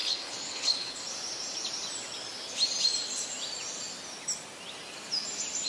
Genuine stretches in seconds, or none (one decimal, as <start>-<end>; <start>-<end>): 1.0-5.7